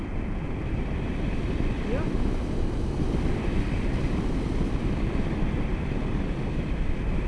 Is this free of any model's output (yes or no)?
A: yes